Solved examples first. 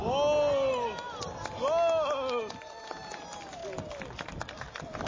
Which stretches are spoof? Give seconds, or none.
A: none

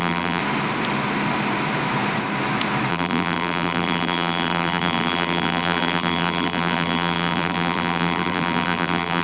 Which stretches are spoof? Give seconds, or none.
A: 0.0-0.4 (vocoder, BigVGAN v2); 2.9-9.2